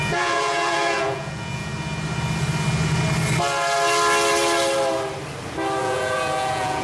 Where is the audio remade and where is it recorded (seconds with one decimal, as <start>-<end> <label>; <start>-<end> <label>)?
0.0-1.7 remade; 1.7-5.8 recorded; 5.8-6.8 remade